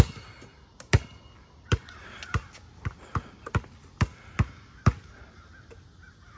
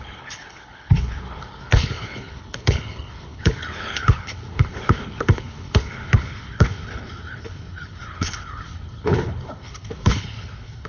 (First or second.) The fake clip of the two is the second